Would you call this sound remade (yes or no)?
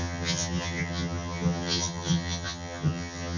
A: yes